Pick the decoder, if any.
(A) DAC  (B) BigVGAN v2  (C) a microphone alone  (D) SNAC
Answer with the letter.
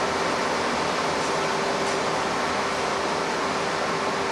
C